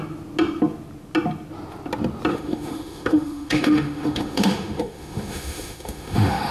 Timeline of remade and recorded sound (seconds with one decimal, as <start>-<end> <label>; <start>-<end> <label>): 0.0-2.3 recorded; 2.3-6.5 remade